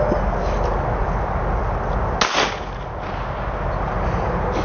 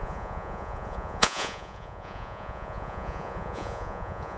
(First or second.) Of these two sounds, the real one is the first